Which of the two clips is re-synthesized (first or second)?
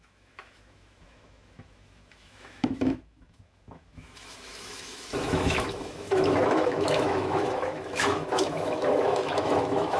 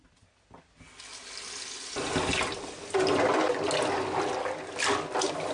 first